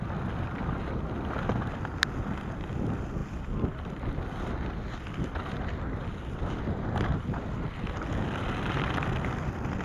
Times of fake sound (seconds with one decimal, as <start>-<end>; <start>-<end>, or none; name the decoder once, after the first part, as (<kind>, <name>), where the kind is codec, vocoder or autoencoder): none